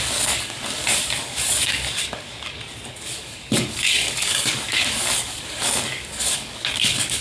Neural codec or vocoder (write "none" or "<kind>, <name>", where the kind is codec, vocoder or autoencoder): codec, DAC